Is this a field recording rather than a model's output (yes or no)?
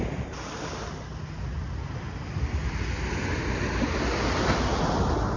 yes